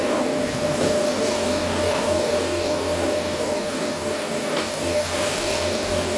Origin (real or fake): fake